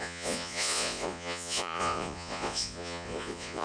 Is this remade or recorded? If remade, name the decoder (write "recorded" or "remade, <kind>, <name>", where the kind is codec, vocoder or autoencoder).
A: remade, vocoder, Vocos